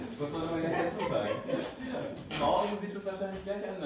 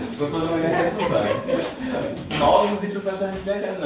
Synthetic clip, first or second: second